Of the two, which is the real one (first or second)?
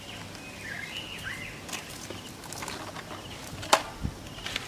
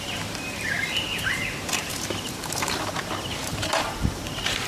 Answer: first